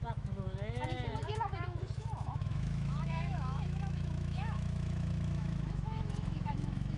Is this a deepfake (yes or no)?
yes